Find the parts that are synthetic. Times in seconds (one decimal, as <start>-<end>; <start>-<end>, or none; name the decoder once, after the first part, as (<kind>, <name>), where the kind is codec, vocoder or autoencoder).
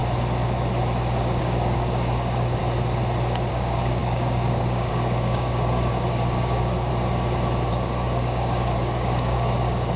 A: 1.4-2.6 (codec, DAC); 3.5-6.9; 7.7-10.0